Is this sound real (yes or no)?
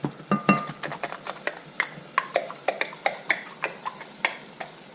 yes